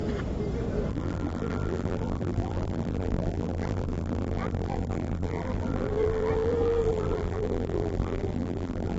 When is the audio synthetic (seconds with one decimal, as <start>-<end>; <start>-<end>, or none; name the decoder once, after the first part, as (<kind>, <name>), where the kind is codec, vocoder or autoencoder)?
0.9-9.0 (vocoder, BigVGAN v2)